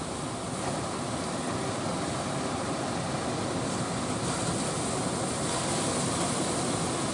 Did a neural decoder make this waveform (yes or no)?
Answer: no